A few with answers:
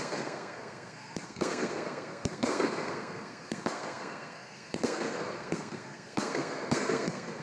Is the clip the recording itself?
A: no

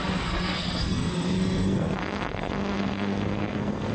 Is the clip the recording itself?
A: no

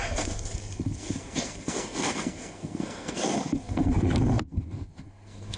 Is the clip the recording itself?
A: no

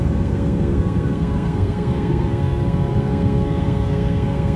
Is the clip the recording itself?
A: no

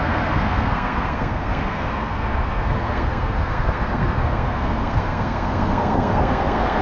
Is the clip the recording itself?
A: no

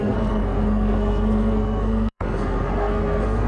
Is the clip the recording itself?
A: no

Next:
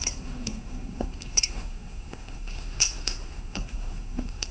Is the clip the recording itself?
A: no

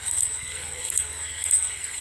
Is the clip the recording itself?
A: no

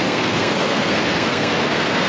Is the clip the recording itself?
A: no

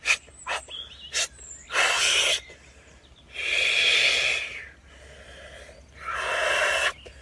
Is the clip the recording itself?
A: yes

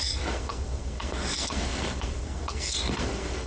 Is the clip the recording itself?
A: no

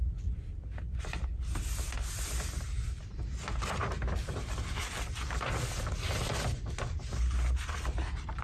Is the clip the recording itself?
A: yes